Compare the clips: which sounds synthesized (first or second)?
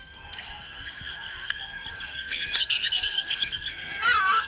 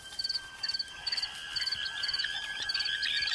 first